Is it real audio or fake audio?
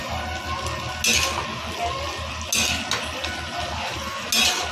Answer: real